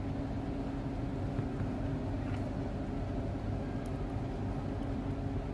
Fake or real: real